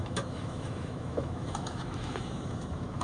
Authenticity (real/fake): fake